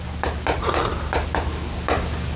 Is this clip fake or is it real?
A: real